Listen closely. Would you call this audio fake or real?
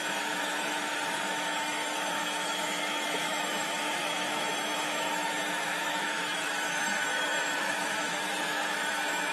fake